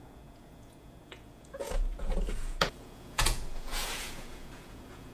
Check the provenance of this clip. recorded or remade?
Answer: remade